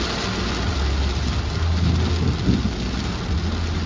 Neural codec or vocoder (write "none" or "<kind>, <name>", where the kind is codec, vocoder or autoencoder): none